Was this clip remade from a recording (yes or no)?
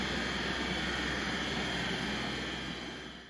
no